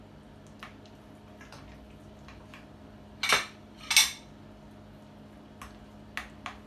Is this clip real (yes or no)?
yes